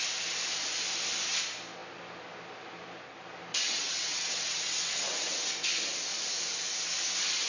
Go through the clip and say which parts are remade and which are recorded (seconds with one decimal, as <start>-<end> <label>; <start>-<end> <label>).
0.0-3.5 recorded; 3.5-5.5 remade; 5.5-7.5 recorded